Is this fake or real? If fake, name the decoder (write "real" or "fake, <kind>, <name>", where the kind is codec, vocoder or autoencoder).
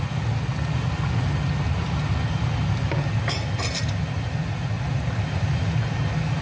real